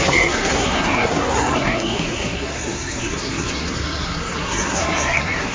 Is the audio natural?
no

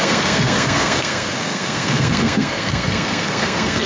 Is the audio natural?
no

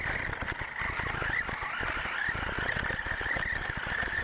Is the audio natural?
yes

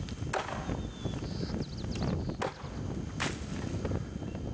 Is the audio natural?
yes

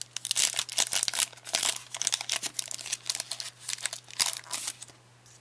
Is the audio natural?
yes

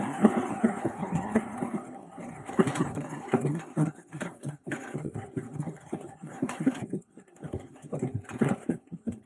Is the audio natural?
no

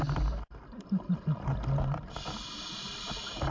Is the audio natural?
yes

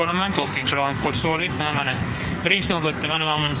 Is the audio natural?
no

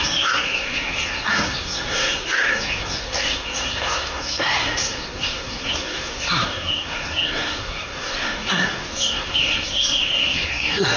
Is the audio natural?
no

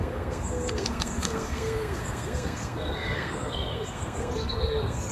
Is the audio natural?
no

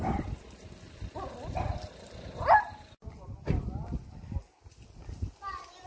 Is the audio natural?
yes